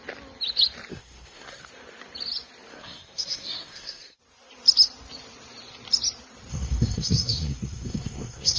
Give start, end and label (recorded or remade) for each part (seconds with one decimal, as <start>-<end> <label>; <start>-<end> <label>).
0.0-0.9 recorded; 0.9-1.7 remade; 1.7-2.7 recorded; 2.7-4.2 remade; 4.2-6.5 recorded; 6.5-8.6 remade

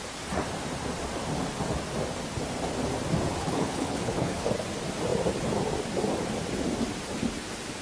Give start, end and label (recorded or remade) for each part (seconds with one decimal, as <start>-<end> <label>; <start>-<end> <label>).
0.0-3.4 recorded; 3.4-4.5 remade; 4.5-7.8 recorded

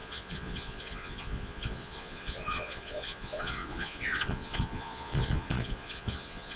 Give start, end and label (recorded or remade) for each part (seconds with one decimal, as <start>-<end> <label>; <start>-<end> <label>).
0.0-6.6 remade